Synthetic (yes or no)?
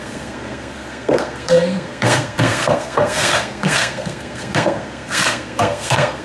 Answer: yes